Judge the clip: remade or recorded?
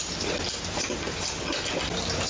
recorded